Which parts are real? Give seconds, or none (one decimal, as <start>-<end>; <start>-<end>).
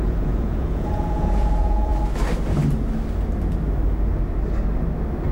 1.9-5.3